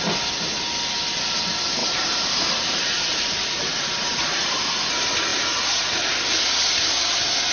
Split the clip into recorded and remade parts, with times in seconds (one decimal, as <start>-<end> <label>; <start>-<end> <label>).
0.0-1.8 recorded; 1.8-4.7 remade; 4.7-7.5 recorded